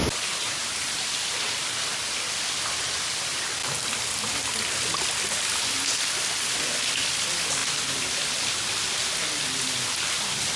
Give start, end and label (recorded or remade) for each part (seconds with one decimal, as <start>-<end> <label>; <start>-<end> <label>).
0.0-10.6 recorded